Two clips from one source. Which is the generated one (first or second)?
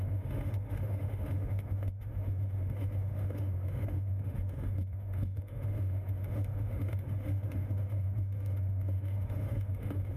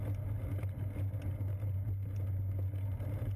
first